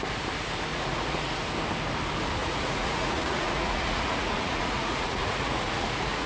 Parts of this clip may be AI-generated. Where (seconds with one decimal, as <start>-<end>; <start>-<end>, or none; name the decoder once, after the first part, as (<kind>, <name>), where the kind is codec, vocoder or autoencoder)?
0.7-1.3 (vocoder, Vocos); 2.4-6.3